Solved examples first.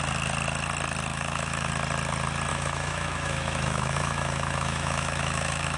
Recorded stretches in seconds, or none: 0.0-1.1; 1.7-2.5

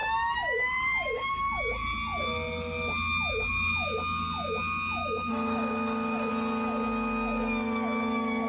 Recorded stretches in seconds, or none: 1.6-5.0; 6.3-8.5

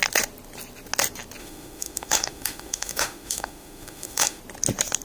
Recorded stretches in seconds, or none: 0.0-1.4; 4.4-5.0

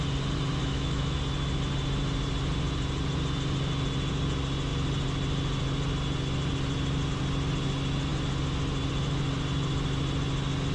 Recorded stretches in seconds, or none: 0.0-0.6; 1.2-10.7

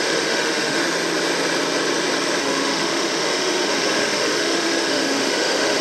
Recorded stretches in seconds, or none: 0.8-2.4

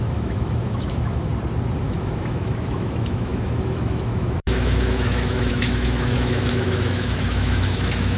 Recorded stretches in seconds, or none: 1.3-1.8

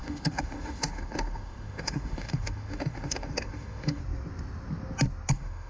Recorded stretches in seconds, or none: 4.0-5.3